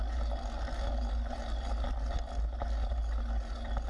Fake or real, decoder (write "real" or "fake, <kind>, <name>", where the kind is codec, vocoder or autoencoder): real